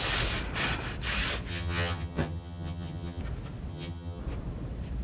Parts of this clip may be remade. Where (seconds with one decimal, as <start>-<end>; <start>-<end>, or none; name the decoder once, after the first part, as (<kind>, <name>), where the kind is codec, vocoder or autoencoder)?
1.5-3.2 (vocoder, HiFi-GAN); 3.7-4.2